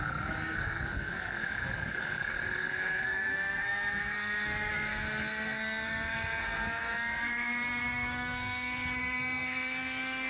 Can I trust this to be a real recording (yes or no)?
no